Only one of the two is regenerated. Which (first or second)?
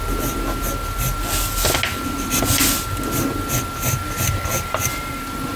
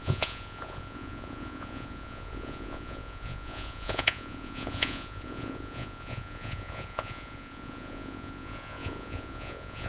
second